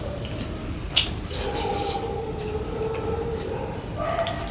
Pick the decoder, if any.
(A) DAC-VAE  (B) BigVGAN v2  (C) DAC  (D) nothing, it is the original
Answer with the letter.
D